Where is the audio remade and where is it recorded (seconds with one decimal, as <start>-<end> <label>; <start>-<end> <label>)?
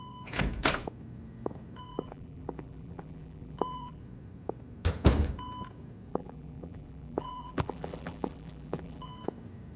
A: 0.0-1.9 recorded; 1.9-4.0 remade; 4.0-6.1 recorded; 6.1-9.1 remade; 9.1-9.8 recorded